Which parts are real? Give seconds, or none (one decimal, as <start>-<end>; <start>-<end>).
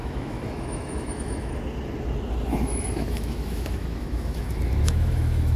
1.5-2.5